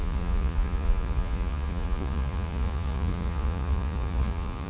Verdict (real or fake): fake